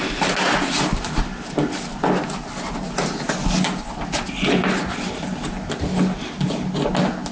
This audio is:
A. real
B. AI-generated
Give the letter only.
A